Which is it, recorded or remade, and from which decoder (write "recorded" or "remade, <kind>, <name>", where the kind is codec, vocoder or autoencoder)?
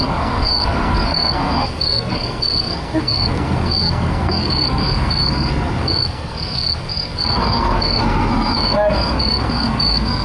remade, codec, SNAC